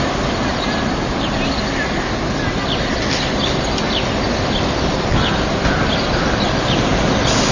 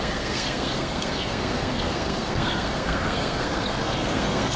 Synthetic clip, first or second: second